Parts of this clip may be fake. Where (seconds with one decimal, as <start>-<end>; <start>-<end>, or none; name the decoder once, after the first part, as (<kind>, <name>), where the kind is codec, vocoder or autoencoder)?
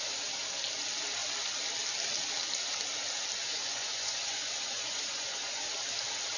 3.4-5.6 (vocoder, Vocos)